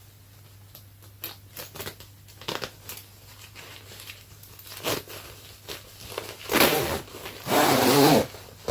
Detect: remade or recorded recorded